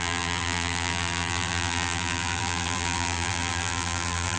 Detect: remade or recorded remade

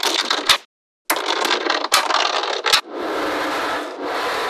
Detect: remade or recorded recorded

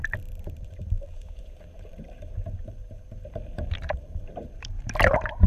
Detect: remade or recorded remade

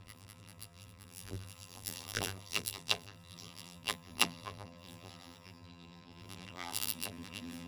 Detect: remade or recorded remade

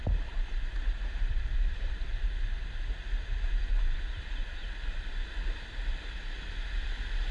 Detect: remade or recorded recorded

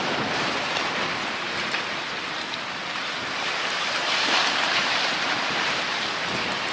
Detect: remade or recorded remade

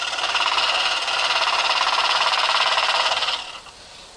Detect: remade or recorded remade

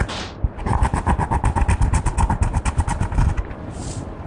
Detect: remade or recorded recorded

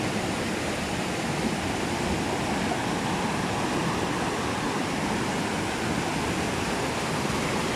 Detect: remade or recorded recorded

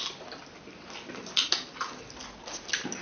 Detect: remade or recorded recorded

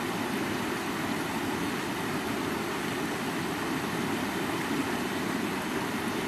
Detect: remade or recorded recorded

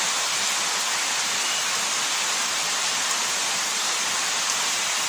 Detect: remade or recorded recorded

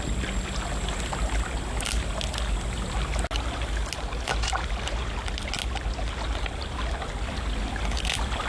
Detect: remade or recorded recorded